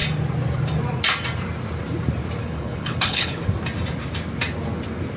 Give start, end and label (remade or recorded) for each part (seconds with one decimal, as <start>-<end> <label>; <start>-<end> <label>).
0.0-2.4 recorded; 2.4-3.4 remade; 3.4-5.2 recorded